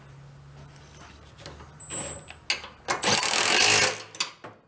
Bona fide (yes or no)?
yes